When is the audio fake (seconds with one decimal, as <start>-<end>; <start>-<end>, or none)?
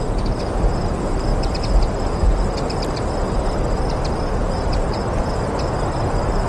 1.3-5.2